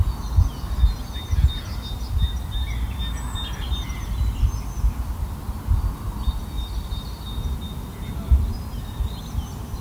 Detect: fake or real real